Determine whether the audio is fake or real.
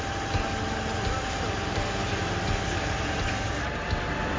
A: real